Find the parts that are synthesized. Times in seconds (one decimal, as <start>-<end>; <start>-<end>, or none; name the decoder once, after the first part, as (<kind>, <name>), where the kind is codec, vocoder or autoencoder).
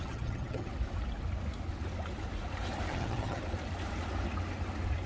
0.0-0.7 (vocoder, HiFi-GAN); 2.9-3.4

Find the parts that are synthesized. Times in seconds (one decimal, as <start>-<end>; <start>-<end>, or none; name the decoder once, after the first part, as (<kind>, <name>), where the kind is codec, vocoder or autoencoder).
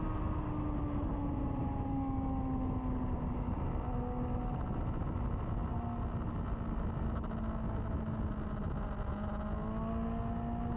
none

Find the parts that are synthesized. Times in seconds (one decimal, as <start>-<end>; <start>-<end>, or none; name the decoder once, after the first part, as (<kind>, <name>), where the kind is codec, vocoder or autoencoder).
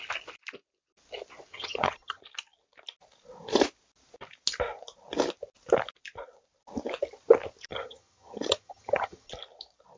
1.5-2.2 (vocoder, HiFi-GAN); 7.7-9.3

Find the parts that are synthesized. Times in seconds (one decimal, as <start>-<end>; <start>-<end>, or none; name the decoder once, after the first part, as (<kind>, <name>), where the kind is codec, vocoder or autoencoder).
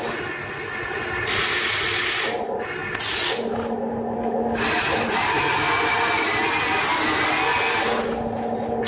none